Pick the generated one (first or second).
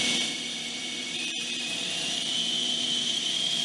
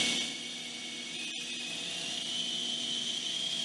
first